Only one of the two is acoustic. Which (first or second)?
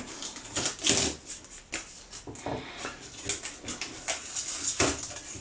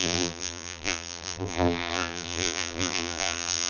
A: first